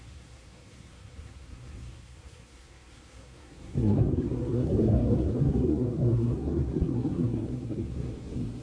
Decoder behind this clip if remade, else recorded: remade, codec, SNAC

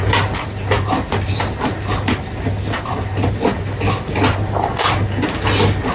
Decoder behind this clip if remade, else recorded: recorded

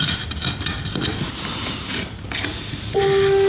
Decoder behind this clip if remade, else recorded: recorded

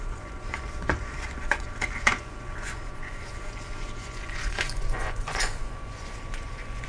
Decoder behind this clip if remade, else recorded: remade, vocoder, Vocos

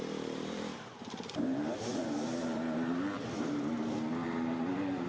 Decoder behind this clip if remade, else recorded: remade, vocoder, BigVGAN v2